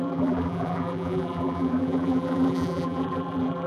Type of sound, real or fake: fake